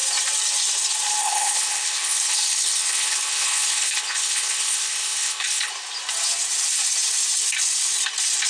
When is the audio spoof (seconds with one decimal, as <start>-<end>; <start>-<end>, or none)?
1.2-5.7